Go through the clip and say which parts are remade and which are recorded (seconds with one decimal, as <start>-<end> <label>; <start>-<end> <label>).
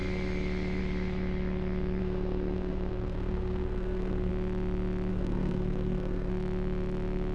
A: 0.0-2.0 recorded; 2.0-4.3 remade; 4.3-5.1 recorded; 5.1-6.3 remade; 6.3-7.3 recorded